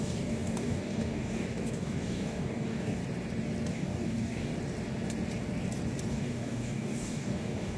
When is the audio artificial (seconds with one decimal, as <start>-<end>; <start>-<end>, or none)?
0.0-3.0; 3.7-4.5; 6.1-7.8